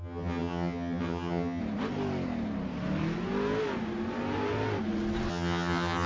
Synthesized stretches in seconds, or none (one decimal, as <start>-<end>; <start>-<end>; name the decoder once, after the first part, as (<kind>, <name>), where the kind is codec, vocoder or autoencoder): 0.0-1.6 (vocoder, HiFi-GAN); 5.3-6.1